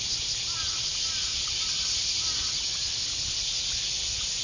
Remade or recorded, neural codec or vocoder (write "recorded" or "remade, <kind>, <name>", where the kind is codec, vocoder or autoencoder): recorded